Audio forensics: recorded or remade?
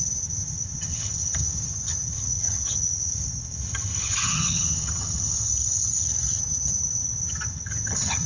remade